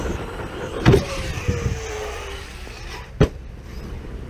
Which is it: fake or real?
fake